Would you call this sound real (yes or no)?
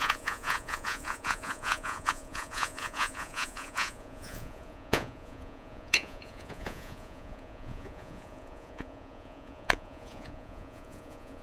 no